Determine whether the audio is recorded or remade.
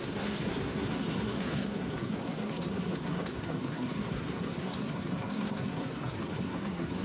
remade